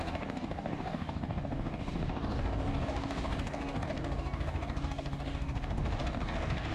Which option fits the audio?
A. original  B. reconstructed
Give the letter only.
B